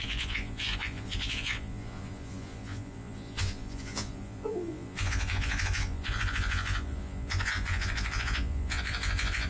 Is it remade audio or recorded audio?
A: remade